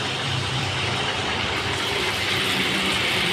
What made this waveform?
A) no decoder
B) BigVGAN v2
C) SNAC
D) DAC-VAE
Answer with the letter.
B